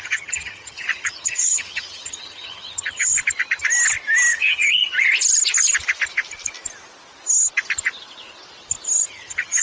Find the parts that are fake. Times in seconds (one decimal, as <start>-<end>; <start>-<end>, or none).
0.0-3.1; 4.3-4.8; 9.1-9.6